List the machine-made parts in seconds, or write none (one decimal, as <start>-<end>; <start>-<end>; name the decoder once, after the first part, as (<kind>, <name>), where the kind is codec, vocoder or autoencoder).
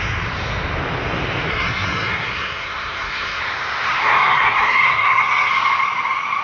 1.5-3.4 (codec, SNAC); 4.0-5.5